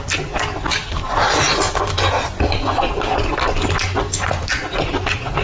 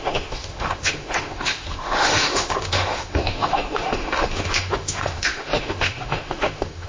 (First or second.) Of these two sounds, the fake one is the second